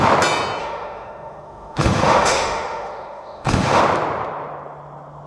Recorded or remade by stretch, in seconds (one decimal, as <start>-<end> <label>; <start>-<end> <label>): 0.0-0.6 recorded; 0.6-3.8 remade; 3.8-5.3 recorded